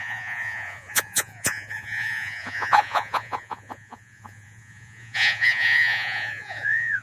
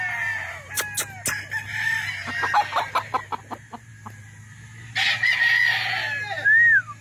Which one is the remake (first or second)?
first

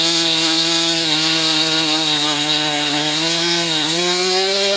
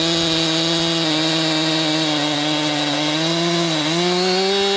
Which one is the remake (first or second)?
first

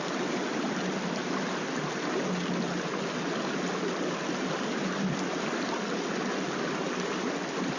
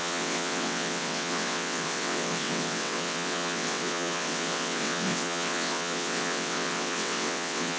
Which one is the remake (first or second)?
second